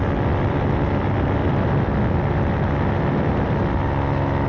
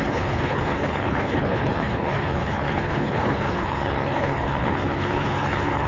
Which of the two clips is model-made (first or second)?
second